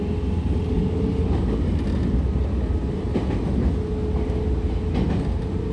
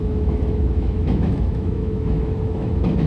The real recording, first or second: first